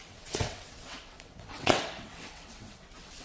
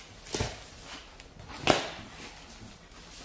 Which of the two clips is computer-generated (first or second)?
first